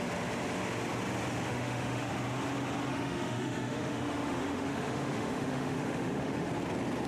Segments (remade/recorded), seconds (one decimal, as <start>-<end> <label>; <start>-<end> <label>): 0.0-1.5 recorded; 1.5-2.1 remade; 2.1-2.9 recorded; 2.9-6.5 remade; 6.5-7.1 recorded